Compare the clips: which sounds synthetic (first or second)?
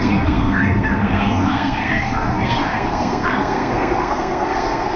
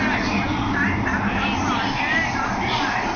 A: first